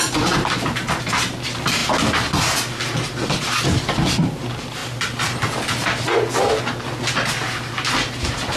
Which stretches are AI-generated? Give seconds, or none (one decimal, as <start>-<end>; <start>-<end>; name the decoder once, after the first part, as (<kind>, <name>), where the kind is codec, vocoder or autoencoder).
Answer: none